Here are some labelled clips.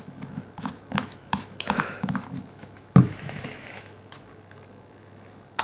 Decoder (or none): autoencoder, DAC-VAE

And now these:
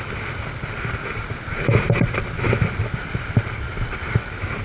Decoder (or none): none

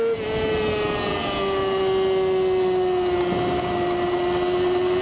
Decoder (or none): none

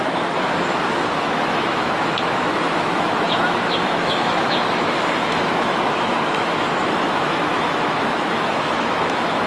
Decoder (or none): autoencoder, DAC-VAE